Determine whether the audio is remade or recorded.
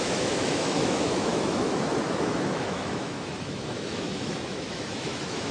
remade